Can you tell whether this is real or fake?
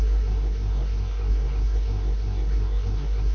fake